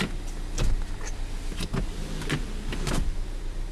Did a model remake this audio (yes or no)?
no